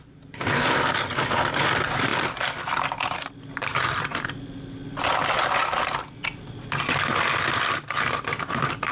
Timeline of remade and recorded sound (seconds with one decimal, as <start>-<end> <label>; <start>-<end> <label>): 0.0-8.9 recorded

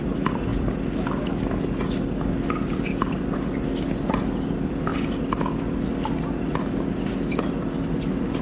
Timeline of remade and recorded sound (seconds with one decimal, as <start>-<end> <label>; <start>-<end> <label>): 0.0-8.4 recorded

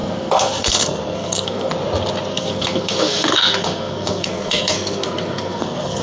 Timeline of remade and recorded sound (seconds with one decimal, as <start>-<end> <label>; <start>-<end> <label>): 0.0-1.7 remade; 1.7-2.3 recorded; 2.3-6.0 remade

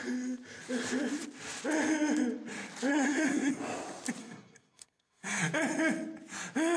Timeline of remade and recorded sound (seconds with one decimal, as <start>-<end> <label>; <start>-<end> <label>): 0.0-2.9 recorded; 2.9-3.5 remade; 3.5-4.2 recorded; 4.2-5.4 remade; 5.4-6.8 recorded

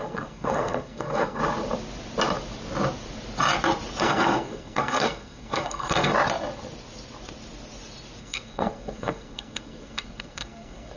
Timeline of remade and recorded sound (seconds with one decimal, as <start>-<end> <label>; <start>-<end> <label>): 0.0-1.4 remade; 1.4-4.0 recorded; 4.0-6.1 remade; 6.1-8.2 recorded; 8.2-11.0 remade

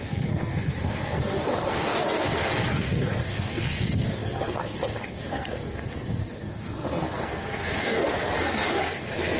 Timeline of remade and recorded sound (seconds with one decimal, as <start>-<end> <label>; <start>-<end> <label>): 0.0-9.4 remade